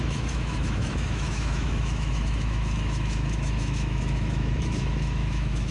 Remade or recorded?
remade